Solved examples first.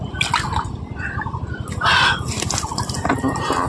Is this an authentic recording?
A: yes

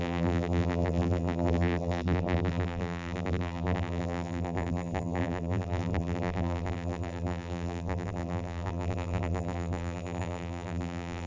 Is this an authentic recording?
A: no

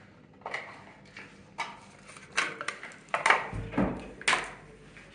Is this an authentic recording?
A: yes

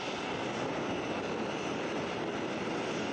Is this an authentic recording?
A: yes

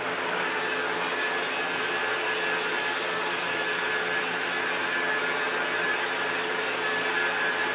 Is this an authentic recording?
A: yes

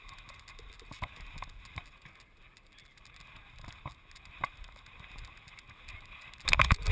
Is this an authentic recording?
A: yes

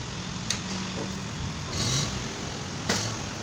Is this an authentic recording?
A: yes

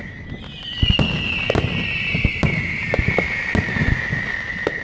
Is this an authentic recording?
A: yes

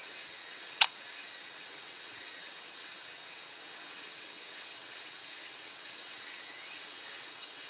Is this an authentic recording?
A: no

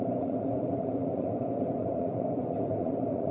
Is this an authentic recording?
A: no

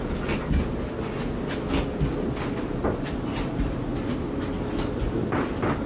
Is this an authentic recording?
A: yes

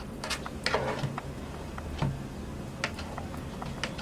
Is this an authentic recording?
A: yes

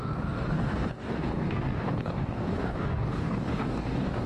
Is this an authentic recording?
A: no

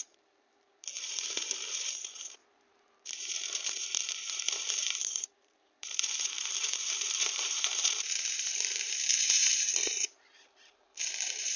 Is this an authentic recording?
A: no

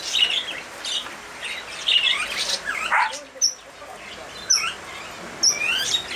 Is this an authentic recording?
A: yes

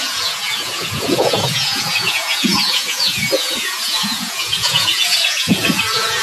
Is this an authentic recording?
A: no